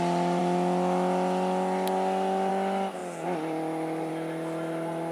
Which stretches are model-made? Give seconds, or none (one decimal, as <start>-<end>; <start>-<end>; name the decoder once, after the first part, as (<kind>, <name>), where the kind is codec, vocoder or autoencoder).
none